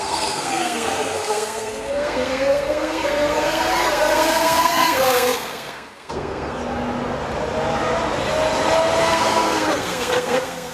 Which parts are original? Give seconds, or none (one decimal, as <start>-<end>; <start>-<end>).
6.6-9.0